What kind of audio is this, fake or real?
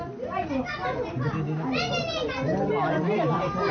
real